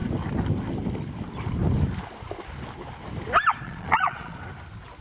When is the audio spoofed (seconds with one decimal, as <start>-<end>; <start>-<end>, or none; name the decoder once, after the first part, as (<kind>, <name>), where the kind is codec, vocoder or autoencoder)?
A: 3.5-4.4 (vocoder, Vocos)